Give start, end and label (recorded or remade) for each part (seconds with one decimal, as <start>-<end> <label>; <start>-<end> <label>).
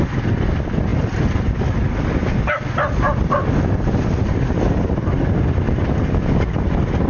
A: 0.0-7.1 recorded